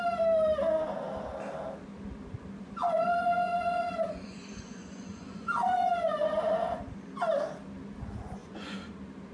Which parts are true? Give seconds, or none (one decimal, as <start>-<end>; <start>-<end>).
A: 0.0-2.8; 6.8-8.4; 8.9-9.3